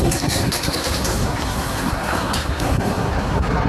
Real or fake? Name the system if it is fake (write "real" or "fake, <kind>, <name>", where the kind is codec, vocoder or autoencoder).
fake, codec, SNAC